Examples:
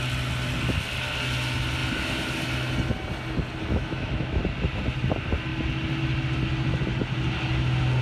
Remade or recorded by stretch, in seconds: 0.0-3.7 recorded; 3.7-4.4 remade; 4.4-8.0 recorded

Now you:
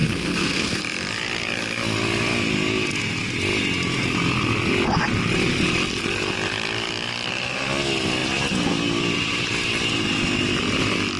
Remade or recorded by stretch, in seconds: 0.0-0.8 remade; 0.8-11.2 recorded

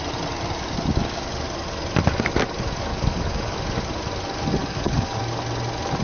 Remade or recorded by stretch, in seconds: 0.0-2.9 recorded; 2.9-3.5 remade; 3.5-4.6 recorded; 4.6-5.2 remade; 5.2-6.0 recorded